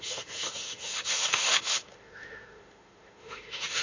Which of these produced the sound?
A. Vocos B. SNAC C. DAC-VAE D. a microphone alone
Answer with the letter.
C